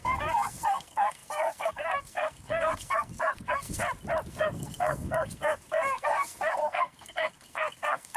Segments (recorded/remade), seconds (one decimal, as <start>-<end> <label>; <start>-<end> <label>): 0.0-3.8 remade; 3.8-4.3 recorded; 4.3-8.2 remade